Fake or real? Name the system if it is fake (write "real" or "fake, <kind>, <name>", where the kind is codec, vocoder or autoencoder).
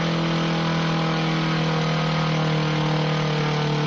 real